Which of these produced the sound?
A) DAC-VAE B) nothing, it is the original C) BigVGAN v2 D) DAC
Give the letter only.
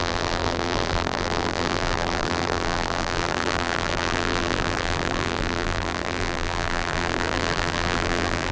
C